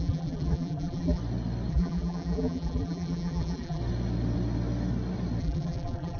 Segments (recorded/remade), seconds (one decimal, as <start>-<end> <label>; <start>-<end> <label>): 0.0-1.2 remade; 1.2-1.7 recorded; 1.7-3.8 remade; 3.8-5.4 recorded; 5.4-6.2 remade